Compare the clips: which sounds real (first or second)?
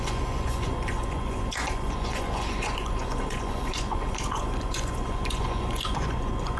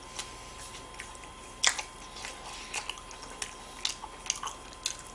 second